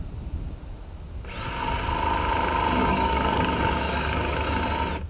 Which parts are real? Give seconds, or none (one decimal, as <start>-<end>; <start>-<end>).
0.0-2.8; 4.6-5.1